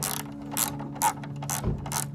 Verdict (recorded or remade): recorded